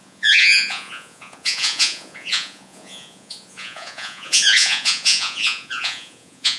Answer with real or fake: fake